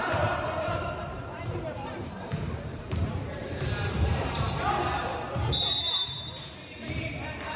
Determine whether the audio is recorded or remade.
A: remade